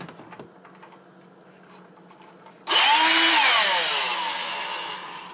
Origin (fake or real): real